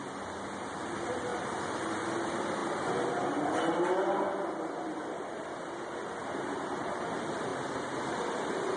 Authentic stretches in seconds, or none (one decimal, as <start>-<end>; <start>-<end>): 0.0-1.3; 1.8-8.8